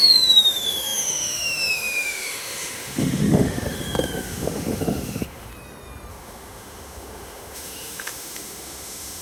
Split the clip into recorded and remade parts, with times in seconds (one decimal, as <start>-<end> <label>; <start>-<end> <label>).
0.0-5.5 remade; 5.5-6.1 recorded; 6.1-9.2 remade